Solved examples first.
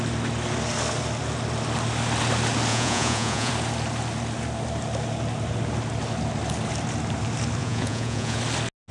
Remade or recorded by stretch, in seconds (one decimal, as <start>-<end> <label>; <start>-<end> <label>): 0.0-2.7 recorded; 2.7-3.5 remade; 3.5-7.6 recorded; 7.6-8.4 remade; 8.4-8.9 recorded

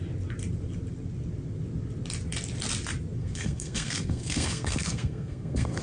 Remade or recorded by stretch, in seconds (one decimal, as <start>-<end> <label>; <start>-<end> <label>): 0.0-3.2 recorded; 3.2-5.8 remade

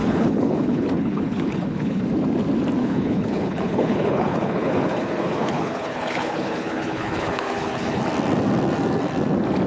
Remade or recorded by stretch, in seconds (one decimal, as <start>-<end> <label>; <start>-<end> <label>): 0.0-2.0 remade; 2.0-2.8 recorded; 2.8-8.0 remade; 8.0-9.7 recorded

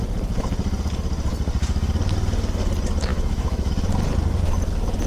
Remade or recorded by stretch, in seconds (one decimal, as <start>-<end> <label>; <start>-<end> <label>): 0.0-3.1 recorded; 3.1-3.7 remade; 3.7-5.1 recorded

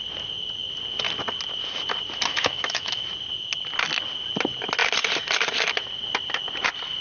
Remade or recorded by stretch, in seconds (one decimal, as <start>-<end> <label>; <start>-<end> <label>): 0.0-2.3 recorded; 2.3-3.0 remade; 3.0-7.0 recorded